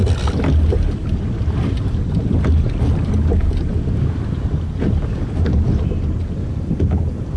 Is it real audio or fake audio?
real